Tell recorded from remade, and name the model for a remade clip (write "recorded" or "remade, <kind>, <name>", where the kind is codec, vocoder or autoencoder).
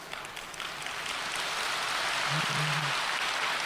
recorded